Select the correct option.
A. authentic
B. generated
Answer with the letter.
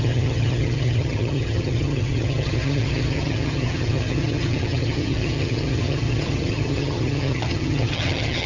B